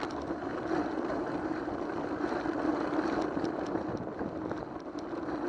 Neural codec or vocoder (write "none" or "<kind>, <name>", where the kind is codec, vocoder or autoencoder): none